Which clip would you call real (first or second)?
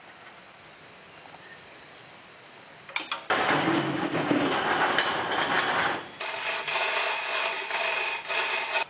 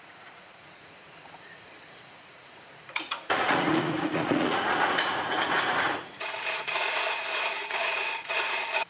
first